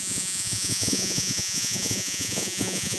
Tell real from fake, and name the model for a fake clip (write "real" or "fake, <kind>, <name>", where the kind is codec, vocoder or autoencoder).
fake, vocoder, Vocos